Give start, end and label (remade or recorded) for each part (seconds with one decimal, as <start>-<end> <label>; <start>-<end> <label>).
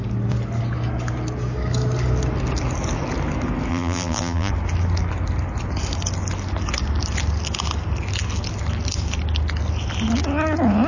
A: 0.0-3.7 recorded; 3.7-4.5 remade; 4.5-10.9 recorded